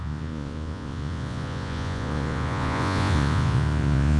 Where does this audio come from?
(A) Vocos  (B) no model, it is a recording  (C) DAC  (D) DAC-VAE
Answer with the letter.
A